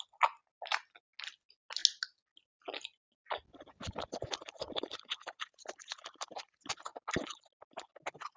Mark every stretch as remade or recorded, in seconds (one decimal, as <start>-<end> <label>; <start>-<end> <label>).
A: 0.0-8.4 recorded